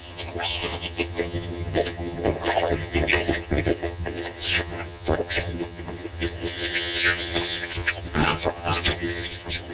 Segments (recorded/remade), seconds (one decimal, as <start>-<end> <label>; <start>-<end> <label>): 0.0-9.7 remade